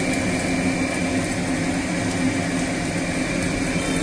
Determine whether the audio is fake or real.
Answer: real